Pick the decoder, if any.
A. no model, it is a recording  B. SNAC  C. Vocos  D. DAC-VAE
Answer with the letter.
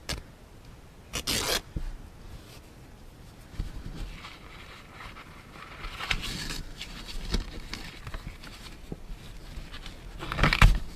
A